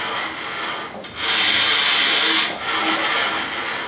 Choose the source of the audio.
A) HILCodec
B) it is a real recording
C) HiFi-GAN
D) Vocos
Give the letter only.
B